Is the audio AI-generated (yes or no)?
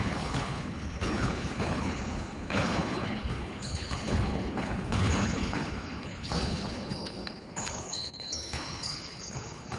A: yes